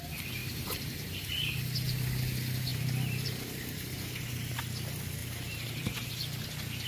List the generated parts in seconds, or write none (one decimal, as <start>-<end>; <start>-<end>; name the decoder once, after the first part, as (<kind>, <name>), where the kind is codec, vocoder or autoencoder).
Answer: 0.4-1.6 (vocoder, BigVGAN v2); 2.7-4.6; 5.2-6.1